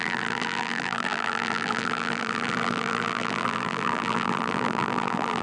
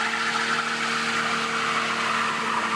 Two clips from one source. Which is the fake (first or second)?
first